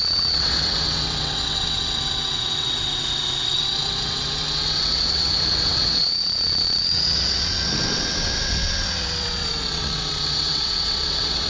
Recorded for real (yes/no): no